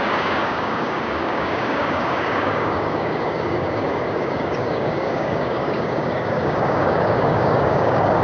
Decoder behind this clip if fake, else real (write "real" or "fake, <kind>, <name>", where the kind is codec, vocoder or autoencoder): fake, codec, DAC